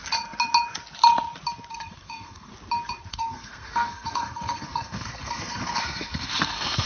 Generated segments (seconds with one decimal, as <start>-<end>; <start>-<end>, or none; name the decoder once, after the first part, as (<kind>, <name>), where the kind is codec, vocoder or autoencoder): 1.7-2.5 (codec, SNAC); 3.1-6.9